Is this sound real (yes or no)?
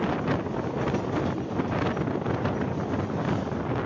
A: yes